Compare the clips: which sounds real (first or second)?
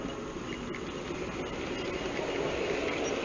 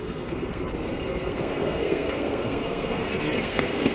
first